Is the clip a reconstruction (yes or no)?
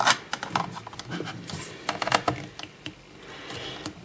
no